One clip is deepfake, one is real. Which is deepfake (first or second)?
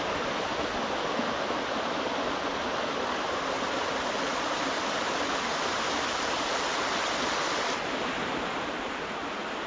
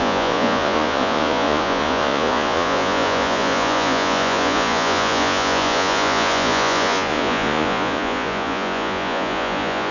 second